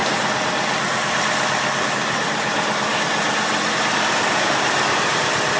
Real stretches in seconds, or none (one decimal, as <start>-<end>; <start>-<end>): 1.2-5.6

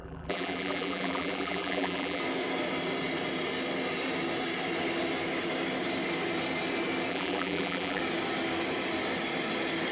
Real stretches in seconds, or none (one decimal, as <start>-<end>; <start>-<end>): 2.2-7.1; 8.0-9.9

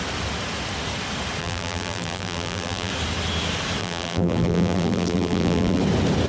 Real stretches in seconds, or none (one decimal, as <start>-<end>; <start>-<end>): 0.0-1.4; 2.9-3.8; 5.8-6.3

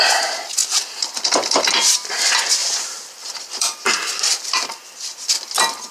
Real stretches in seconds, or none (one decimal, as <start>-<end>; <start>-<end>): 0.0-2.6; 4.7-5.9

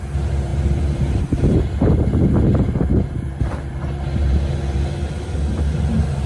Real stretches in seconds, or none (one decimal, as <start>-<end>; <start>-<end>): 0.0-2.9; 4.5-6.3